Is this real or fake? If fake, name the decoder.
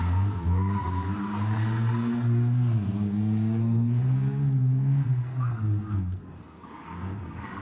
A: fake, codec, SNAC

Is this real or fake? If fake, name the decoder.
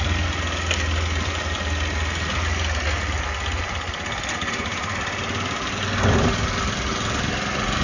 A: real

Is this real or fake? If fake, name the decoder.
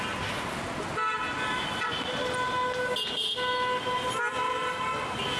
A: real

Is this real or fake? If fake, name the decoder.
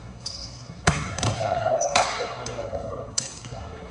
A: fake, codec, SNAC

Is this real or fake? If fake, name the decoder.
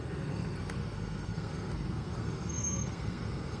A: fake, codec, SNAC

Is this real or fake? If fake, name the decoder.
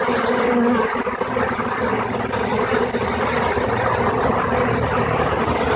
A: real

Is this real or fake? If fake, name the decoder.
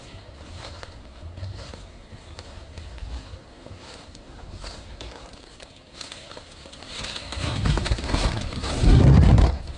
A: fake, codec, SNAC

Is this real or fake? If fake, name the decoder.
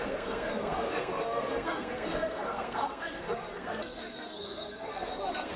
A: fake, codec, SNAC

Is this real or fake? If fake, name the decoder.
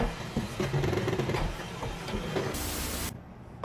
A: real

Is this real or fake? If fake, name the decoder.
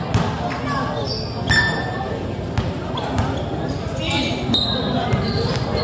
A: real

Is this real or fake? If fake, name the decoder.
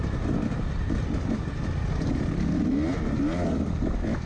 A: real